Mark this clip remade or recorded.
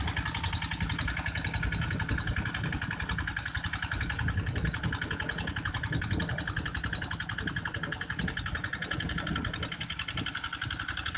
recorded